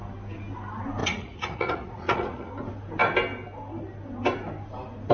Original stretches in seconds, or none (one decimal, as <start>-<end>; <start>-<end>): 0.0-1.0; 2.5-5.1